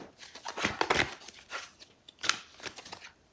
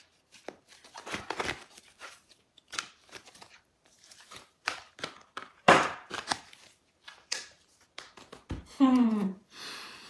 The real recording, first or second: first